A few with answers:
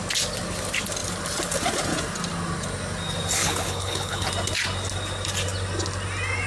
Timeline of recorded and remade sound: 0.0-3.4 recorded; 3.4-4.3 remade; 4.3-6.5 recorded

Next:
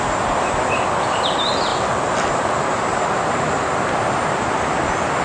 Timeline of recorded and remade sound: 0.0-5.2 recorded

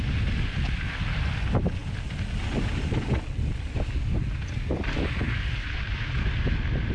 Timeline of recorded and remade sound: 0.0-6.9 recorded

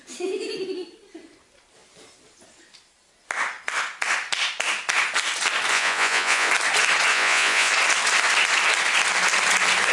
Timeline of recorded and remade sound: 0.0-5.7 recorded; 5.7-6.5 remade; 6.5-7.1 recorded; 7.1-7.7 remade; 7.7-9.9 recorded

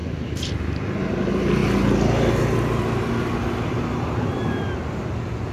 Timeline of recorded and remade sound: 0.0-0.6 remade; 0.6-5.5 recorded

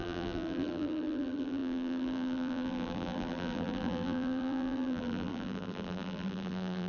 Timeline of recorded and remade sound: 0.0-6.9 remade

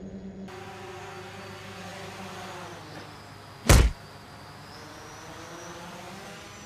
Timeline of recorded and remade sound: 0.0-6.7 recorded

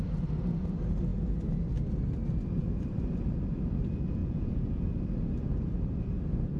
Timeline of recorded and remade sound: 0.0-4.2 recorded; 4.2-4.9 remade; 4.9-6.6 recorded